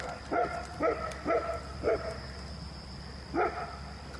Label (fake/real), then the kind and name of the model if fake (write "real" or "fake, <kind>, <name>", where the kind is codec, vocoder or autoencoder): real